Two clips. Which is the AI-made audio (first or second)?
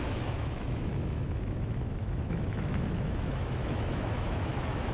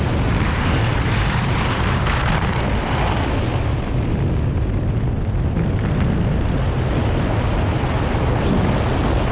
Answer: first